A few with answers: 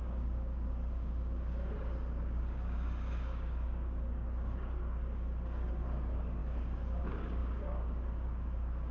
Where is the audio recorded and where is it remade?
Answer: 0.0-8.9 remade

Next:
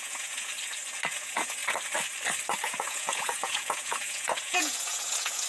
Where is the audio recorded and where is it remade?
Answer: 0.0-0.5 remade; 0.5-1.2 recorded; 1.2-1.6 remade; 1.6-2.6 recorded; 2.6-5.5 remade

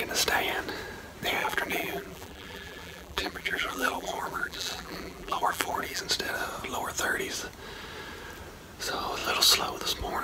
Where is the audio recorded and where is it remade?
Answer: 0.0-1.4 recorded; 1.4-6.0 remade; 6.0-10.2 recorded

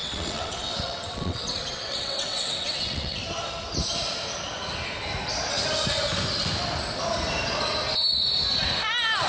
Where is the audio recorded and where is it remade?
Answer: 0.0-3.2 remade; 3.2-9.3 recorded